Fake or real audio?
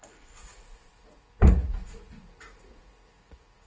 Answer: fake